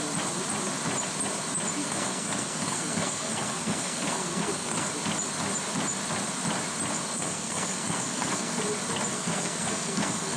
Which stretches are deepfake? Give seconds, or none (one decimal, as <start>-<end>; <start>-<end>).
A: 1.8-4.9; 7.1-8.6; 9.1-10.4